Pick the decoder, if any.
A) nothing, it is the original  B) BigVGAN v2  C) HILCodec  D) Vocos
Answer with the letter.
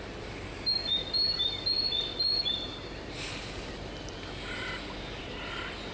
A